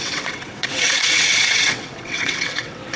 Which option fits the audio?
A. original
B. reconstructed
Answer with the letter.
B